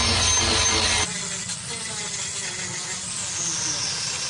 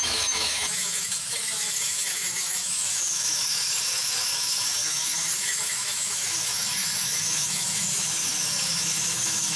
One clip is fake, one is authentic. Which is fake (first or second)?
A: second